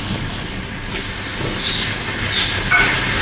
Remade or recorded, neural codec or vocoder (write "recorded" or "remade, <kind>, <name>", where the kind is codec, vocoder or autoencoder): recorded